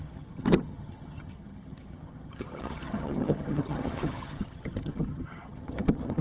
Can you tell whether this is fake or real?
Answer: fake